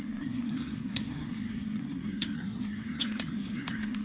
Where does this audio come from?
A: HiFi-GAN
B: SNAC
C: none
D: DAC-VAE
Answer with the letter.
B